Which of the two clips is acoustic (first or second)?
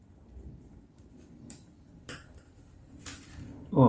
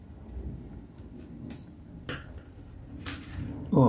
second